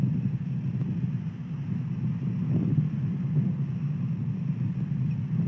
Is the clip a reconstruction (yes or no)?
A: no